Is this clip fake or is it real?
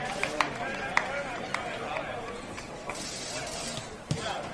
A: real